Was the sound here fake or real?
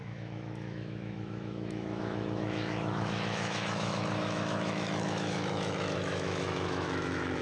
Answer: fake